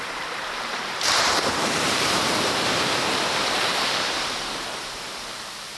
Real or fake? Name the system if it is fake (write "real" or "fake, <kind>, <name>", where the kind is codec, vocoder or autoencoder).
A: fake, vocoder, BigVGAN v2